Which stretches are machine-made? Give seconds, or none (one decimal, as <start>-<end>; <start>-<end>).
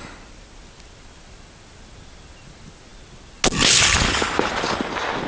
none